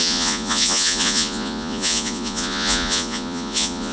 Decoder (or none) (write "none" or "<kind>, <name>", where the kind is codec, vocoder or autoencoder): vocoder, Vocos